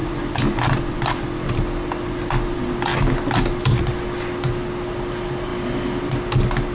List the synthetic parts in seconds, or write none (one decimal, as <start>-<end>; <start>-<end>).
none